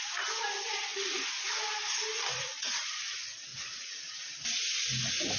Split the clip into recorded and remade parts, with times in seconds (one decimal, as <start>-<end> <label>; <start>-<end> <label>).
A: 0.0-3.5 recorded; 3.5-4.3 remade; 4.3-5.4 recorded